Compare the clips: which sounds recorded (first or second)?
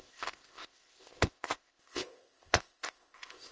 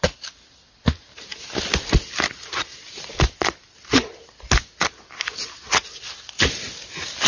second